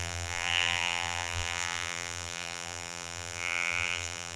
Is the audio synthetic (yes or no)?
yes